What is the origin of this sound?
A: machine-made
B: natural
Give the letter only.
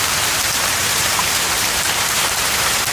A